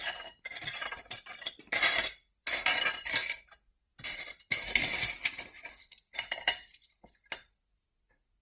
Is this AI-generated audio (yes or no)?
yes